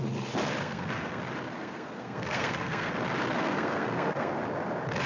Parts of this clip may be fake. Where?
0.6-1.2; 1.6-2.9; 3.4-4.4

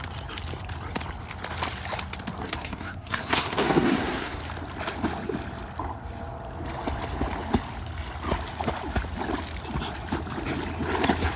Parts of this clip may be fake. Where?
2.5-4.4

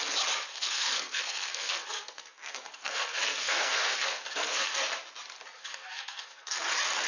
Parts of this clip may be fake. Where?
0.5-4.8; 5.6-6.6